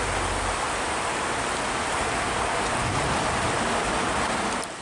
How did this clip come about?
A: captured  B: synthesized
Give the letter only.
A